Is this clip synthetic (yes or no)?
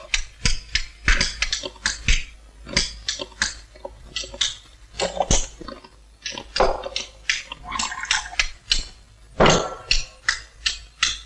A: no